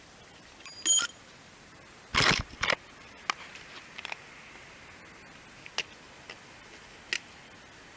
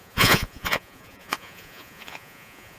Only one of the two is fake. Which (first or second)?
second